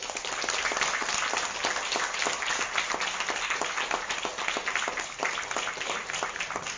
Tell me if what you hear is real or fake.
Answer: real